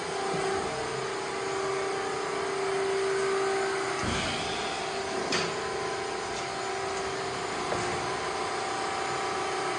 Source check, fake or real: real